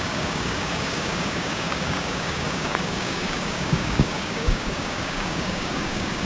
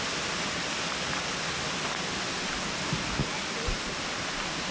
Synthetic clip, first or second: first